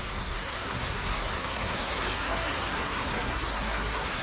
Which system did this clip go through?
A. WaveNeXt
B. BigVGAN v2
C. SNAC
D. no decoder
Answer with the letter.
C